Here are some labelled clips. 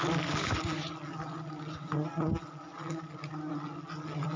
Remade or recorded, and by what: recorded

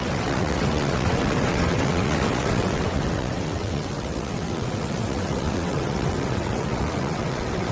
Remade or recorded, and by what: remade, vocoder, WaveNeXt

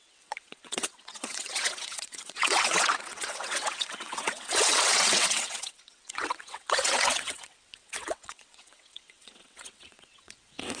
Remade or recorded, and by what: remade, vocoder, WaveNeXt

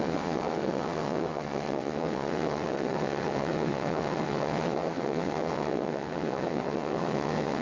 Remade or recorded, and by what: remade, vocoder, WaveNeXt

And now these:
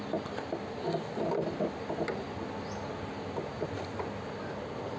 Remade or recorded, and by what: recorded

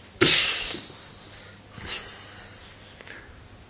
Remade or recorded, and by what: recorded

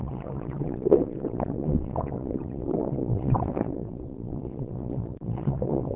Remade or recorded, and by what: remade, vocoder, WaveNeXt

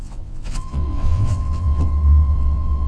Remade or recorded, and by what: remade, vocoder, WaveNeXt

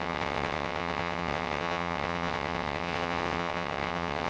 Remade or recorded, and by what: remade, vocoder, WaveNeXt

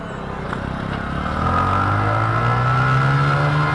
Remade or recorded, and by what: recorded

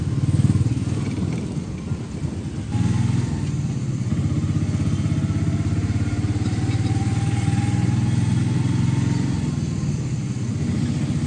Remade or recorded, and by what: recorded